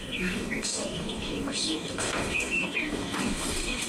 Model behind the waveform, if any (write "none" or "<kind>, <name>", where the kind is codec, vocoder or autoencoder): codec, DAC